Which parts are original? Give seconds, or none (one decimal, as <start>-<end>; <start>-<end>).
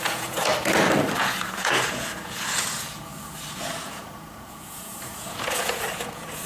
0.5-1.2; 3.1-3.7